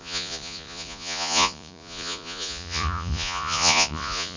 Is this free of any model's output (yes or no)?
no